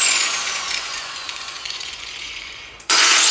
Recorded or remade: remade